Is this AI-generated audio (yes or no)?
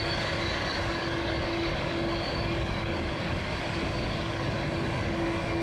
yes